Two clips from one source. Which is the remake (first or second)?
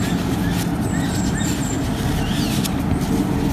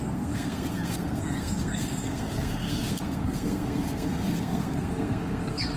second